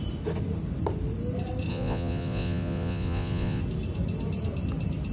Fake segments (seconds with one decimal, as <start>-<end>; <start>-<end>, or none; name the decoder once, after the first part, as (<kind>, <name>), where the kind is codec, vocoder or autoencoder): 1.7-3.6 (vocoder, Vocos)